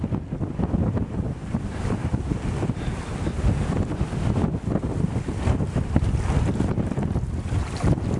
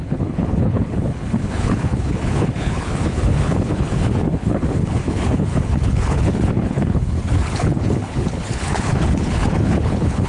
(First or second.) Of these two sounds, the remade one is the second